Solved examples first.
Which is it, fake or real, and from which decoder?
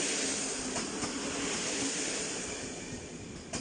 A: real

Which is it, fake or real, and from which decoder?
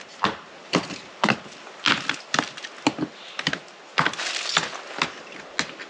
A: real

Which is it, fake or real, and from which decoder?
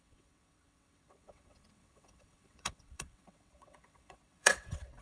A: fake, vocoder, WaveNeXt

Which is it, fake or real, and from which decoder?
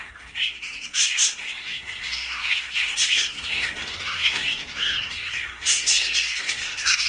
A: fake, codec, SNAC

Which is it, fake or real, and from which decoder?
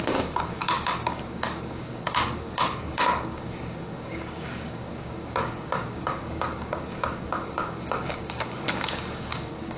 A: fake, codec, DAC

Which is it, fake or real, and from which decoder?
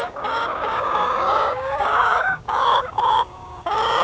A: fake, codec, DAC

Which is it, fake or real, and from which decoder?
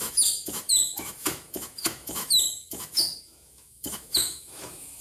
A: fake, autoencoder, DAC-VAE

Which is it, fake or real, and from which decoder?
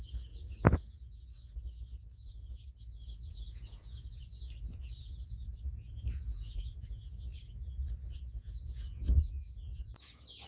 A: fake, vocoder, Vocos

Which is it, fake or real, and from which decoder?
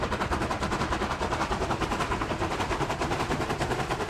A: real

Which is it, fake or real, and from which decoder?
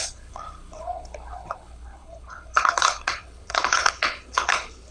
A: fake, codec, HILCodec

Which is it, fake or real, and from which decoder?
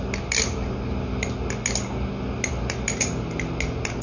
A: real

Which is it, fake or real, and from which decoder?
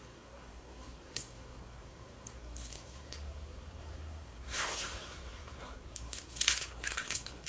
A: fake, codec, SNAC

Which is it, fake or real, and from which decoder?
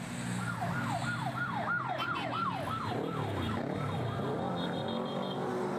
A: real